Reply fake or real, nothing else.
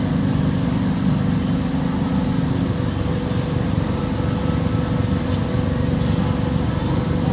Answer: real